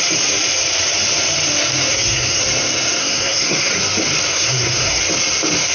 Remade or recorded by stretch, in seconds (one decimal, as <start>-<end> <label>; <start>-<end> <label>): 0.0-1.9 recorded; 1.9-2.4 remade; 2.4-3.0 recorded; 3.0-3.7 remade; 3.7-4.3 recorded; 4.3-5.0 remade; 5.0-5.7 recorded